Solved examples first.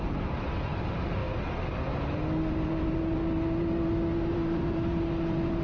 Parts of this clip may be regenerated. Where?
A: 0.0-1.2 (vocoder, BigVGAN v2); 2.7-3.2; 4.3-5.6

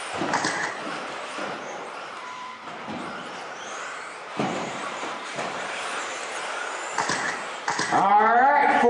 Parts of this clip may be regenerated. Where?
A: 0.0-8.9 (vocoder, BigVGAN v2)

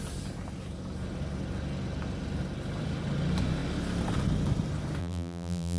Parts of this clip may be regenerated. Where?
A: 5.0-5.8 (vocoder, BigVGAN v2)

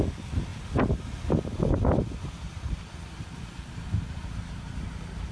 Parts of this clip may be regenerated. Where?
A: none

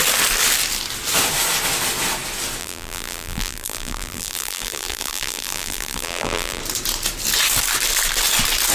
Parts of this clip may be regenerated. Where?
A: 2.6-6.6 (vocoder, BigVGAN v2)

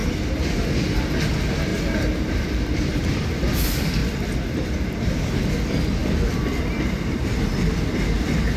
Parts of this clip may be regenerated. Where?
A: 0.0-0.6 (vocoder, BigVGAN v2); 1.7-3.0; 4.0-5.2; 6.0-7.3

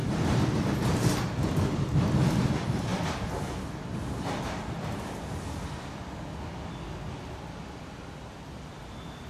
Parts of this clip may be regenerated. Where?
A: 0.0-1.4 (vocoder, BigVGAN v2)

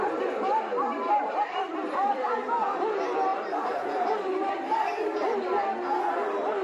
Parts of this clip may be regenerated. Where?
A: 3.3-4.5 (vocoder, BigVGAN v2)